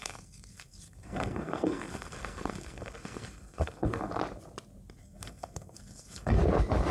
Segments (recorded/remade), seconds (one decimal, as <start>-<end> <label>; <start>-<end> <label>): 0.0-4.1 remade; 4.1-5.0 recorded; 5.0-6.4 remade; 6.4-6.9 recorded